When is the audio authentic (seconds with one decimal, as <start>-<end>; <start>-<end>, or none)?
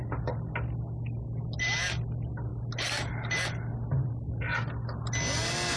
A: 0.0-5.8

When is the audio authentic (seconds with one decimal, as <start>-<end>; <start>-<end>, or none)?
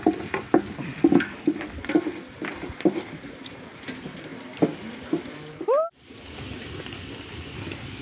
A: 0.0-8.0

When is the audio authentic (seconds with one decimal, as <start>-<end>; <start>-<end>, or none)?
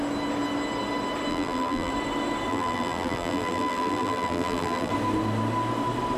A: 0.0-1.3; 1.9-2.5; 4.9-6.2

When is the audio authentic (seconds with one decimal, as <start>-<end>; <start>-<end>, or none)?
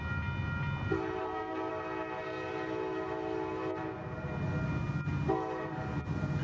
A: 0.0-1.2; 1.7-6.4